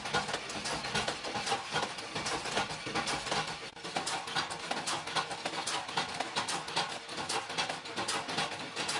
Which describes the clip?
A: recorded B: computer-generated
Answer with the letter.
A